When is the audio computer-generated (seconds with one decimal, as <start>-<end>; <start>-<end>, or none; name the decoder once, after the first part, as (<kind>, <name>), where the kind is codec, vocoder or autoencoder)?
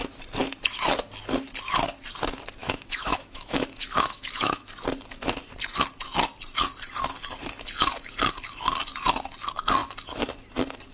2.6-4.7 (autoencoder, DAC-VAE)